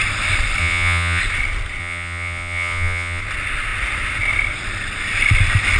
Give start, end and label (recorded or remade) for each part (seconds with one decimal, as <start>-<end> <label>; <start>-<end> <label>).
0.0-0.6 recorded; 0.6-1.2 remade; 1.2-1.8 recorded; 1.8-3.2 remade; 3.2-5.8 recorded